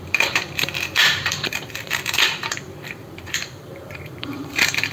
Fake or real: fake